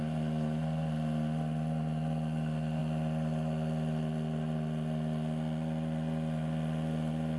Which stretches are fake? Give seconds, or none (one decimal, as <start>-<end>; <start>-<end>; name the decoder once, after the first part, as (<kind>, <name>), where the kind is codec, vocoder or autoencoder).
none